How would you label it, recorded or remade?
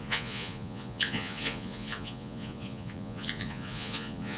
remade